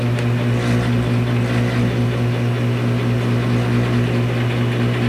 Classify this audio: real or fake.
real